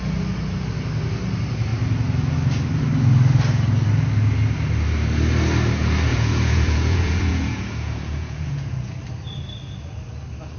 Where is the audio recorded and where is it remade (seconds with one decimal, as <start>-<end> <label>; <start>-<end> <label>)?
0.0-6.1 recorded; 6.1-8.9 remade; 8.9-10.6 recorded